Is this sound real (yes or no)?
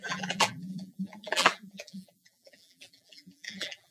no